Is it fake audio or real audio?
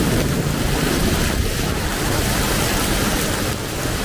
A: fake